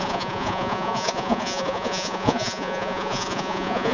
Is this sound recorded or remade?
remade